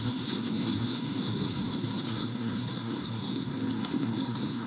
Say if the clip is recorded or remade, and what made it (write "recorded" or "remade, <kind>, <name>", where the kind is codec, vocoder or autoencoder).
remade, codec, SNAC